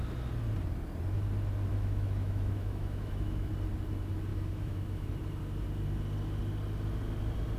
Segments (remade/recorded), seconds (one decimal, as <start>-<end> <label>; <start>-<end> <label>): 0.0-1.7 recorded; 1.7-3.5 remade; 3.5-4.3 recorded; 4.3-5.1 remade; 5.1-7.6 recorded